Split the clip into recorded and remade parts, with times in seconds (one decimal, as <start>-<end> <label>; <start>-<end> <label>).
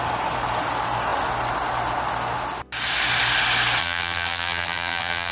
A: 0.0-3.8 recorded; 3.8-5.3 remade